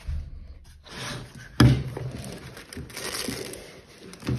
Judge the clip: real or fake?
real